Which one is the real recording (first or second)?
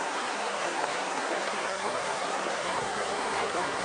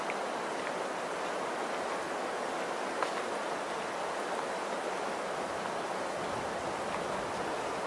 second